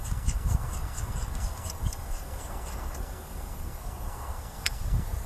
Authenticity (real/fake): fake